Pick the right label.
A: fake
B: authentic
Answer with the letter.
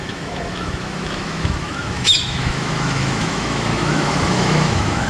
A